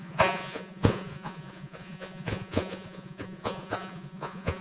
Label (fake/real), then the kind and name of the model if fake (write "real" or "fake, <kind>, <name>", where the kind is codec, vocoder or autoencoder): fake, vocoder, Vocos